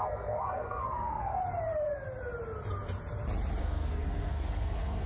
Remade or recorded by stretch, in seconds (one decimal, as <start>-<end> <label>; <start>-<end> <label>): 0.0-1.4 remade; 1.4-3.6 recorded; 3.6-5.1 remade